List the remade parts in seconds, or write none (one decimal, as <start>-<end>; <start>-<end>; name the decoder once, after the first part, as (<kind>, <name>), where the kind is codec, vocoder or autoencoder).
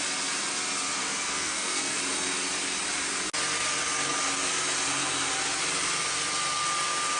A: 1.0-2.0 (codec, SNAC)